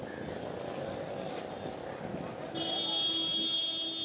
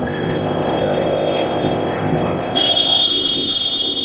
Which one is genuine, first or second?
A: first